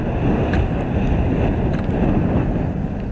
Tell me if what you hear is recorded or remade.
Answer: recorded